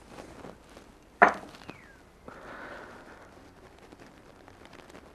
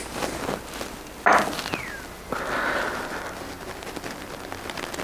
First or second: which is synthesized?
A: first